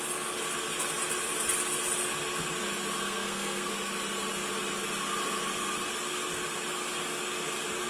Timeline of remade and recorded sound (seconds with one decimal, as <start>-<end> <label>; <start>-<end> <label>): 0.0-3.0 recorded; 3.0-3.7 remade; 3.7-7.9 recorded